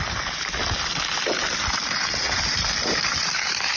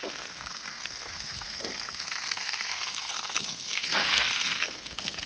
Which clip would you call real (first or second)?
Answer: first